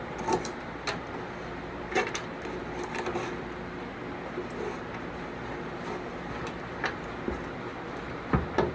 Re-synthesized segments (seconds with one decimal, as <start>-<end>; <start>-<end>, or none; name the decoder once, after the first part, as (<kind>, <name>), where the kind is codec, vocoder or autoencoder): none

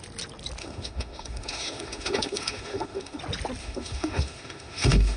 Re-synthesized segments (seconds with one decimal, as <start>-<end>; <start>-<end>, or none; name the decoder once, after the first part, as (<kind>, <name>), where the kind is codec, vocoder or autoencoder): 0.6-3.2 (autoencoder, DAC-VAE); 3.6-5.2

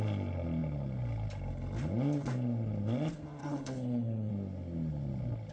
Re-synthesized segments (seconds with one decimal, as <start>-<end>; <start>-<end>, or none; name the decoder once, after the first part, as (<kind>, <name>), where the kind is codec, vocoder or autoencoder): 3.4-4.3 (codec, HILCodec)

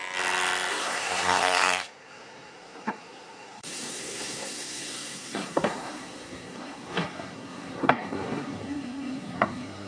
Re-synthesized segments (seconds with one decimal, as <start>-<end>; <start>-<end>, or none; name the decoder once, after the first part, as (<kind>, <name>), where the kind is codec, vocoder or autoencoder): 0.7-9.9 (codec, SNAC)

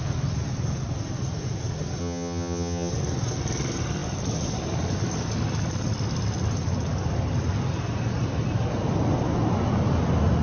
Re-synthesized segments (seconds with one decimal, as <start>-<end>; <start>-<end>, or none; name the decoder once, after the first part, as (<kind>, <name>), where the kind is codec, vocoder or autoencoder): 2.0-2.9 (vocoder, HiFi-GAN)

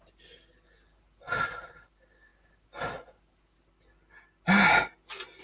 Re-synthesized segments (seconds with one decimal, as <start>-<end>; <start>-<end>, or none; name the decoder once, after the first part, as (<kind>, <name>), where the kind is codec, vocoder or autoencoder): none

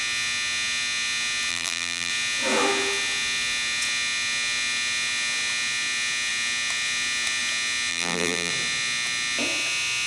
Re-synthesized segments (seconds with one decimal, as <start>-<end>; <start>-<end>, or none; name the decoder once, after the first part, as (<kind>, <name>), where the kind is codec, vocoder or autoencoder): 1.5-2.1 (vocoder, BigVGAN v2); 7.9-8.5

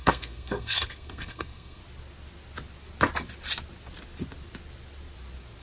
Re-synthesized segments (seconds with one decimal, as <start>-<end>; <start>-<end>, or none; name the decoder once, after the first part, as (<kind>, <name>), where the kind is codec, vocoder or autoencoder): 0.0-1.8 (codec, SNAC)